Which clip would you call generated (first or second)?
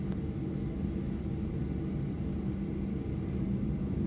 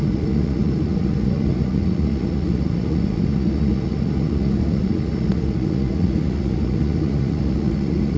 second